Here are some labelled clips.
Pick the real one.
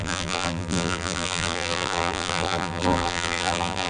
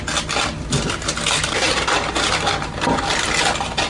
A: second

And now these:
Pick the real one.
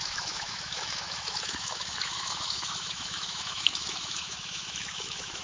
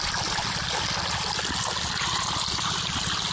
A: second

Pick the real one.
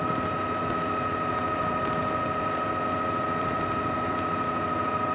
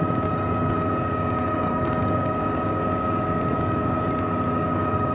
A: first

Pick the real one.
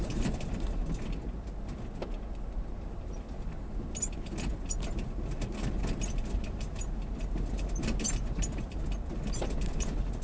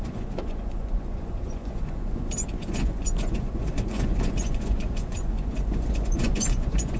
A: first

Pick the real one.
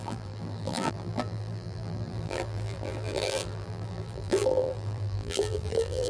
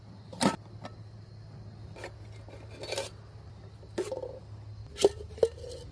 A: second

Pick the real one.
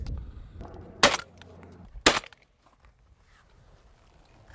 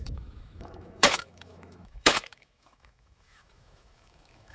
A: first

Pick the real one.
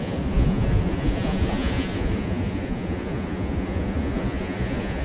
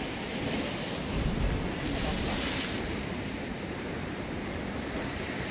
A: second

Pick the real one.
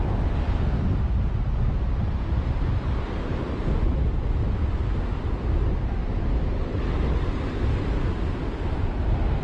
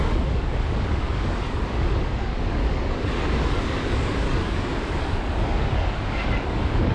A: first